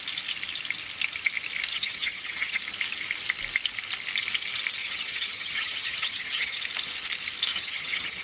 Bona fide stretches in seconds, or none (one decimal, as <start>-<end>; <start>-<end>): 0.0-1.7; 2.6-4.8; 6.6-7.5